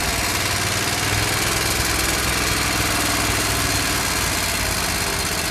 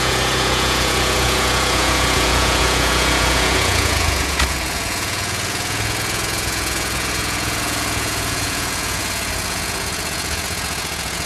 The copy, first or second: second